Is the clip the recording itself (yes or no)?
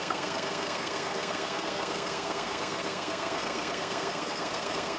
no